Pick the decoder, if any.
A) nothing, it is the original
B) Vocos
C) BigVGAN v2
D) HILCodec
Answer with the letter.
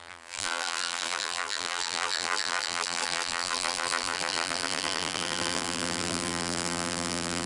C